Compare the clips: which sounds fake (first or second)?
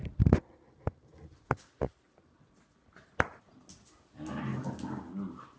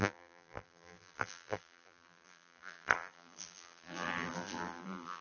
second